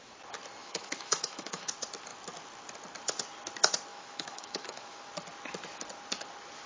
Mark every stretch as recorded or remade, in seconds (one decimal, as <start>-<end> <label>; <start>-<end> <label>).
0.0-0.6 recorded; 0.6-1.7 remade; 1.7-3.9 recorded; 3.9-5.1 remade; 5.1-6.7 recorded